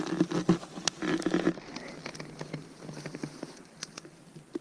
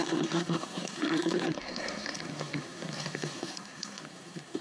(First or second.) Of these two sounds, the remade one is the second